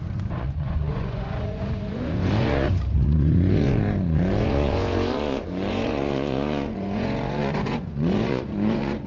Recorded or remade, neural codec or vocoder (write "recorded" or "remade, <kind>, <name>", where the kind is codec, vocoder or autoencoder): remade, vocoder, Vocos